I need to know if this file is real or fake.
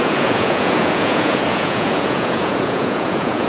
fake